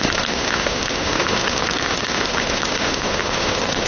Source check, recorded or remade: remade